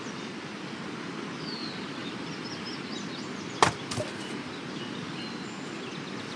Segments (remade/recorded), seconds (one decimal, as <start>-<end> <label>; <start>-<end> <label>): 0.0-6.4 recorded